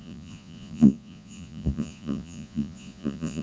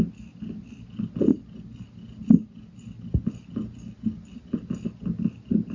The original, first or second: second